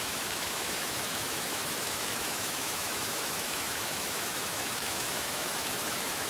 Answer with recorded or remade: remade